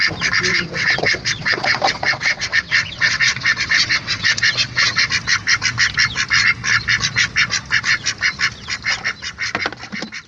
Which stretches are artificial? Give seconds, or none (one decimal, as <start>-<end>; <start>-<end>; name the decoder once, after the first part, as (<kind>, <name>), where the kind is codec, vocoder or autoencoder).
0.5-5.1 (vocoder, WaveNeXt)